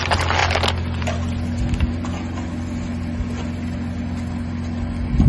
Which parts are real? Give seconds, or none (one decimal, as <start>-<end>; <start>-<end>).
0.0-5.3